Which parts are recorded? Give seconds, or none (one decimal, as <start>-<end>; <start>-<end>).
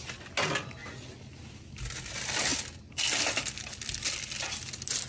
0.0-5.1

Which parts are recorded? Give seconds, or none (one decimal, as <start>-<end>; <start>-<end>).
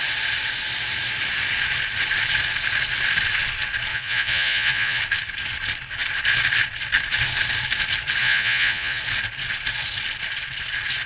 0.0-3.9; 5.0-8.2; 9.0-11.1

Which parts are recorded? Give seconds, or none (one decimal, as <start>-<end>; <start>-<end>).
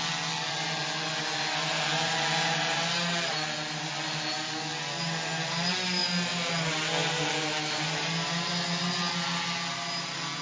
0.0-10.4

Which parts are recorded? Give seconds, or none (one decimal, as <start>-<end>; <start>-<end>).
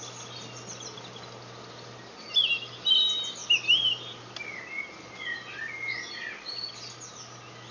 0.0-7.7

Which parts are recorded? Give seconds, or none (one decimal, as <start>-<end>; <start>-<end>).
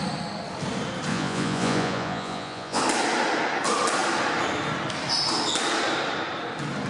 0.0-1.1; 2.8-6.9